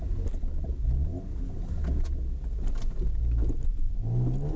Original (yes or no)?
yes